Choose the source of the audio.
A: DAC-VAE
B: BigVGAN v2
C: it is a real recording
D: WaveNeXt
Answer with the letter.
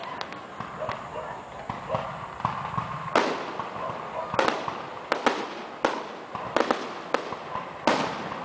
C